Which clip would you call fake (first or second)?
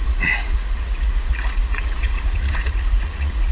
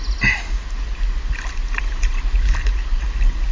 first